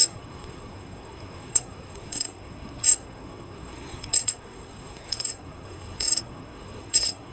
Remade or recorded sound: remade